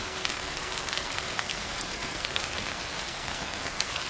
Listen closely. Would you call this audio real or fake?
fake